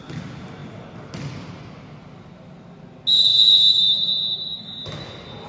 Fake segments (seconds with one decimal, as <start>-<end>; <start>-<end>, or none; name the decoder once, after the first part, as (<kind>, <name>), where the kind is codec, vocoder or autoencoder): none